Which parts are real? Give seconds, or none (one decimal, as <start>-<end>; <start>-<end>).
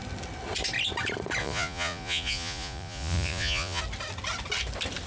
0.0-1.4; 3.8-5.1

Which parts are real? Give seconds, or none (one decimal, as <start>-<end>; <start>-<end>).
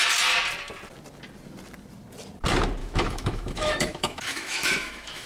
0.0-2.8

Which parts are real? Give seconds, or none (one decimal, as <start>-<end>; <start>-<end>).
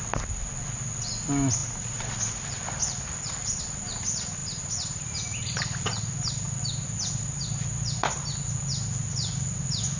0.0-10.0